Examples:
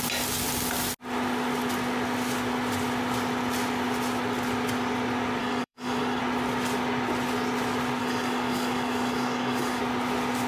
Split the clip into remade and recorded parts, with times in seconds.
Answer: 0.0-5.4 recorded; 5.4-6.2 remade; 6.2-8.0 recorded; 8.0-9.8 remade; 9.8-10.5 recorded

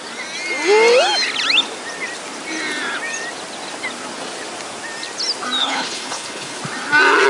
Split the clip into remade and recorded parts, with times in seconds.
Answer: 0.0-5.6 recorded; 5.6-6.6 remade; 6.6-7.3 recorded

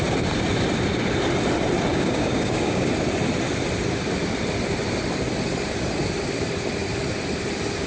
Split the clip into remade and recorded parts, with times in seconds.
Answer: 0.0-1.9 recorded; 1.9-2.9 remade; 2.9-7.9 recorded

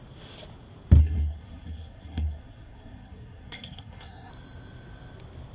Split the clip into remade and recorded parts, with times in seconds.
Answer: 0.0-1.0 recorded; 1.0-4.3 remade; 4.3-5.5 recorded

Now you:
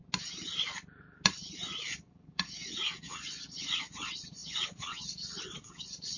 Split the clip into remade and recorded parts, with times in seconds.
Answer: 0.0-1.8 recorded; 1.8-6.2 remade